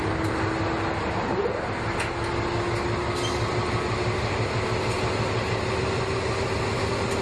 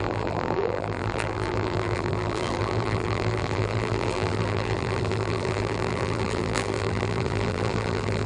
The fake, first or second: second